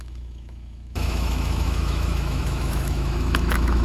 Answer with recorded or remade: remade